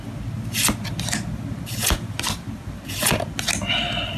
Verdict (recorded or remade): recorded